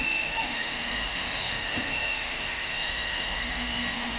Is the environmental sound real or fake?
fake